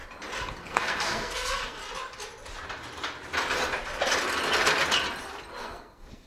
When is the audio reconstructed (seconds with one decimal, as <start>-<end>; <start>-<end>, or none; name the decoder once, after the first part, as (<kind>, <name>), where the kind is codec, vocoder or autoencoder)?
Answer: 0.6-1.8 (codec, SNAC); 5.6-6.3